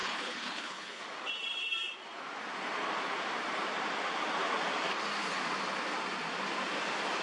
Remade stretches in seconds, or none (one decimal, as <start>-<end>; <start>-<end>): 0.0-1.0